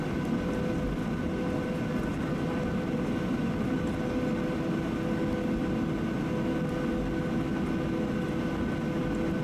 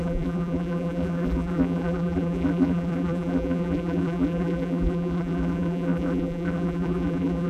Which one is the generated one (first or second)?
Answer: second